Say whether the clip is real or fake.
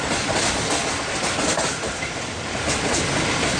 real